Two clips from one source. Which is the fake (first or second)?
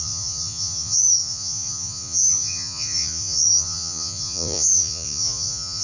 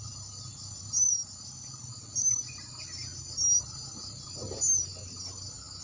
first